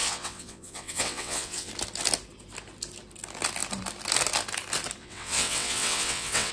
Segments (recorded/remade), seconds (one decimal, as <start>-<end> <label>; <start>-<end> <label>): 0.0-1.7 remade; 1.7-5.0 recorded; 5.0-6.5 remade